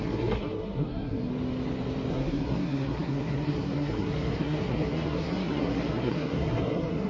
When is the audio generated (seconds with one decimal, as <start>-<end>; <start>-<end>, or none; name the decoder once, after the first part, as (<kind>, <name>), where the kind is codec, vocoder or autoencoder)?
0.0-1.3 (codec, SNAC); 2.1-7.1